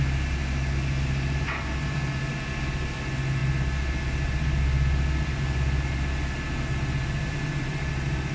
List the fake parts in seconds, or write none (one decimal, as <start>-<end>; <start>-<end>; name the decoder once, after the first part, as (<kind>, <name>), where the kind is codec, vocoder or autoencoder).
none